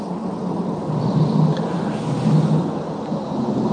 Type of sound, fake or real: real